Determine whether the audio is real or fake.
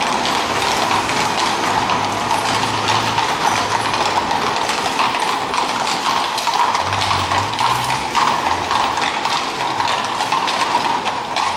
real